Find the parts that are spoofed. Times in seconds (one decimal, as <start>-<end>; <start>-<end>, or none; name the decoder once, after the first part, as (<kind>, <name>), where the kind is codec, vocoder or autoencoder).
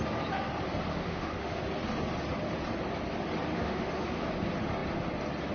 0.9-1.6 (autoencoder, DAC-VAE); 3.5-4.3